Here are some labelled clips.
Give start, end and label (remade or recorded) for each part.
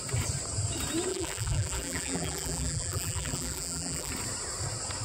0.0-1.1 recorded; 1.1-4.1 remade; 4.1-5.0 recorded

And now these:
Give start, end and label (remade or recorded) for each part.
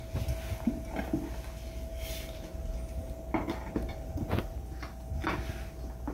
0.0-1.9 recorded; 1.9-2.7 remade; 2.7-3.6 recorded; 3.6-4.9 remade; 4.9-6.1 recorded